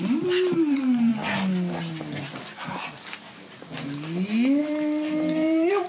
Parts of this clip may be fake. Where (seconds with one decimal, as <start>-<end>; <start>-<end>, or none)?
0.0-1.1; 4.6-5.9